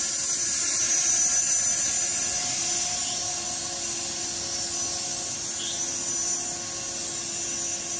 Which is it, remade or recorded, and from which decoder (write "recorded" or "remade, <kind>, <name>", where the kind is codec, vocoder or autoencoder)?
recorded